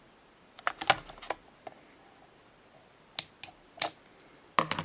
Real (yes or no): yes